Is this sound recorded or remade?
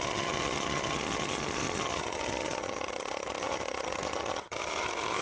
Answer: remade